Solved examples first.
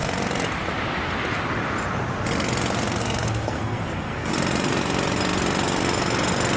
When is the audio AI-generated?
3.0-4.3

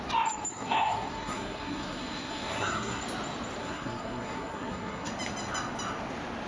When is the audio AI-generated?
0.5-3.0; 3.6-5.1

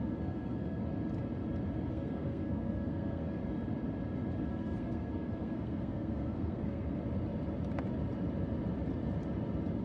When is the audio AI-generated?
0.0-0.8; 1.9-3.4; 4.5-7.0

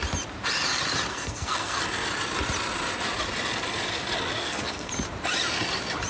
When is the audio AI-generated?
1.1-1.8; 4.4-4.9

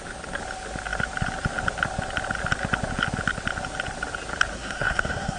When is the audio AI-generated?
4.5-5.4